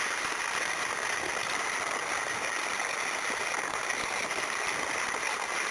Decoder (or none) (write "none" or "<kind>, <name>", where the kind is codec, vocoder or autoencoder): none